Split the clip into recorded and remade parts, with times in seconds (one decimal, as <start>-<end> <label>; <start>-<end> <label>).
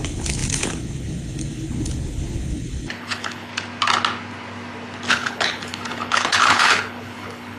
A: 0.0-3.5 remade; 3.5-5.1 recorded; 5.1-7.6 remade